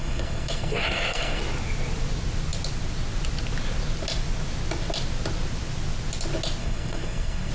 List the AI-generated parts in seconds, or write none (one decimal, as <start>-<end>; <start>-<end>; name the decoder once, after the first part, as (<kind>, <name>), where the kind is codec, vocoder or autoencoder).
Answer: 0.0-1.4 (codec, SNAC); 6.6-7.5